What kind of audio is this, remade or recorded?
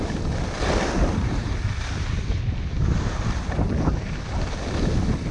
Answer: recorded